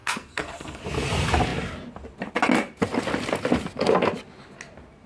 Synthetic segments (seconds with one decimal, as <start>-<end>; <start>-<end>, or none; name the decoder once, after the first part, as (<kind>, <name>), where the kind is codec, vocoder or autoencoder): 0.0-0.8 (codec, SNAC)